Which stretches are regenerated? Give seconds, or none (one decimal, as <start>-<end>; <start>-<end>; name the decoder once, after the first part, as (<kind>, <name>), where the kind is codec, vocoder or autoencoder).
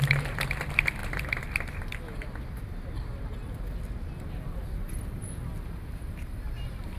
0.0-0.6 (vocoder, BigVGAN v2); 5.2-7.0